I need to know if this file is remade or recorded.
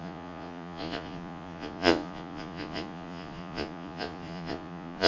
remade